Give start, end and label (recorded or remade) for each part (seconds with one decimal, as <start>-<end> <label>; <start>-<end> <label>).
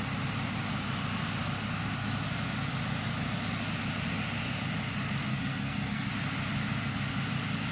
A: 0.0-5.3 recorded; 5.3-6.1 remade; 6.1-7.7 recorded